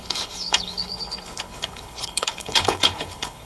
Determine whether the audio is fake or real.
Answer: fake